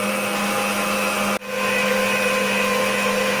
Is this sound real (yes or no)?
yes